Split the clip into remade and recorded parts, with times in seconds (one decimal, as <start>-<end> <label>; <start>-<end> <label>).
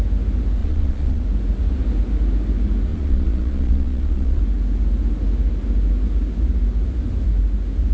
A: 0.0-0.6 recorded; 0.6-1.2 remade; 1.2-2.9 recorded; 2.9-4.4 remade; 4.4-7.9 recorded